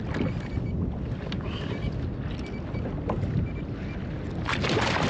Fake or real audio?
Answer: real